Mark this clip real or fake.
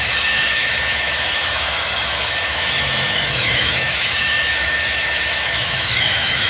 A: fake